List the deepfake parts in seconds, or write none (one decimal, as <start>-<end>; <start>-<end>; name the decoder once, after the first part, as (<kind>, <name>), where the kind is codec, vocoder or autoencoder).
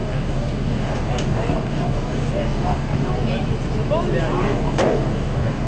0.0-3.1 (codec, DAC); 4.4-5.7